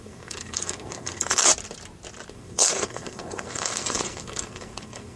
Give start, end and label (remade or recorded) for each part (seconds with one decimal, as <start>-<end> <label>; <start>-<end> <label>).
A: 0.0-1.5 remade; 1.5-2.3 recorded; 2.3-5.2 remade